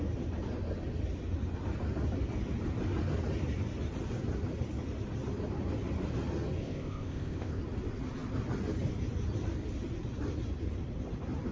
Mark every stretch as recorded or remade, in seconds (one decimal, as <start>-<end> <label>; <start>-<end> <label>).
0.0-6.6 recorded; 6.6-7.6 remade; 7.6-11.5 recorded